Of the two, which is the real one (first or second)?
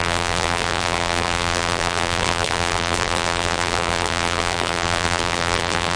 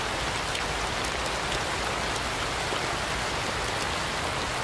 second